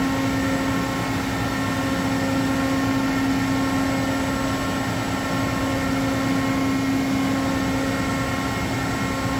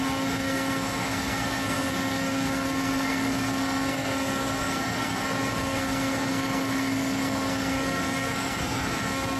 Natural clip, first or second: first